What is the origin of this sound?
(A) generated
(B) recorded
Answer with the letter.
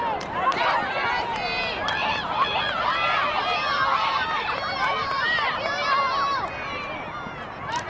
B